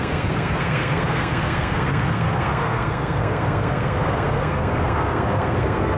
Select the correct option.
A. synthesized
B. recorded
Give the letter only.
A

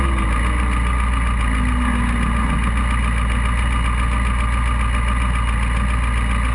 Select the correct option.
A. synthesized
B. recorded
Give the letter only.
B